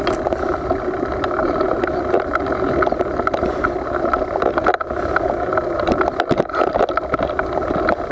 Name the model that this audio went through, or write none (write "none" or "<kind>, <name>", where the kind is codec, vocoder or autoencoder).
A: none